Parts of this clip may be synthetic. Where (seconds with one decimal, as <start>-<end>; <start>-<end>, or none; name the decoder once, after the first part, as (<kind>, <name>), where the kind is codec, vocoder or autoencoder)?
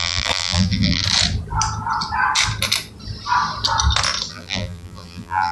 0.0-1.0 (vocoder, BigVGAN v2); 4.3-5.5